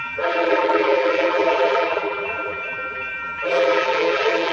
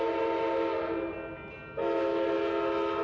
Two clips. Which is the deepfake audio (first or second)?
first